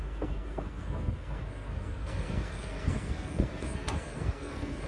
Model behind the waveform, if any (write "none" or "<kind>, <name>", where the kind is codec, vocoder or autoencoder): codec, SNAC